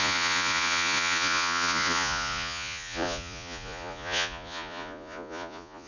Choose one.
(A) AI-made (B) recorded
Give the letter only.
A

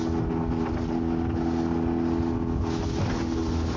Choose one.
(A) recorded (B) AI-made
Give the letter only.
A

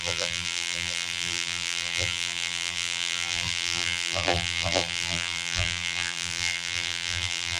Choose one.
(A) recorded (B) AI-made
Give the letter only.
B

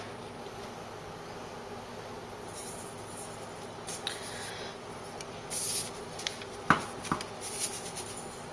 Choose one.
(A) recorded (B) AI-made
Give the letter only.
A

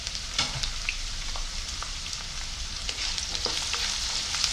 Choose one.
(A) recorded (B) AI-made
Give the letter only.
B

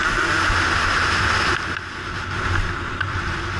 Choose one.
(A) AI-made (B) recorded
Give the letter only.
B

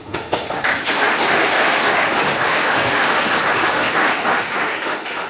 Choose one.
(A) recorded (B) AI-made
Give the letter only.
B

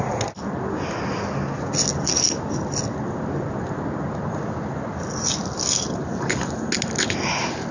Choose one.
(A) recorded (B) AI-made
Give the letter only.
A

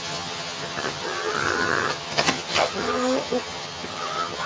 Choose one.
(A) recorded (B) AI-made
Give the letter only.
B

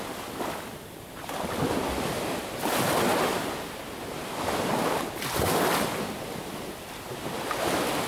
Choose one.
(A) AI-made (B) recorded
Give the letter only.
B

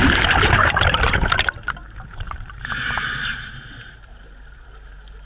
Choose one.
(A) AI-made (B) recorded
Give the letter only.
A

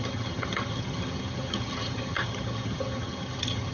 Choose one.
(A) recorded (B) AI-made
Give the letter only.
B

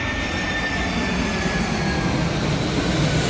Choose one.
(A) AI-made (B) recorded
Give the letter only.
B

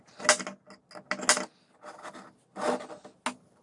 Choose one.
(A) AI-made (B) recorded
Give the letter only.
B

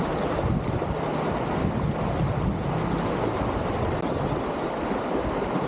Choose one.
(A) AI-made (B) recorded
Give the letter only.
B